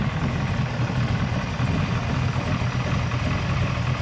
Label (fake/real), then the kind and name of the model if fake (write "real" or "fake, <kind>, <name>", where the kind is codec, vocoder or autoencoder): real